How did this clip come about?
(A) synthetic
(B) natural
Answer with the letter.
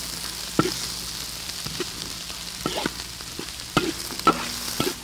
B